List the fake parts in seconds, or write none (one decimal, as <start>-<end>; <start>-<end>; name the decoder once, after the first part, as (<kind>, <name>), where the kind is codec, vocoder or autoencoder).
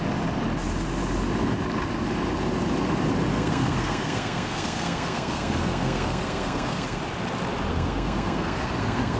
3.3-7.0 (codec, SNAC); 7.7-9.2